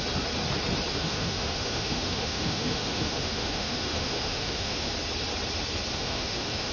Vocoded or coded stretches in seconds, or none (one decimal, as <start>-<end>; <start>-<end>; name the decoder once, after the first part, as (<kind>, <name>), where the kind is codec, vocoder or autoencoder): 0.9-4.9 (autoencoder, DAC-VAE); 5.9-6.7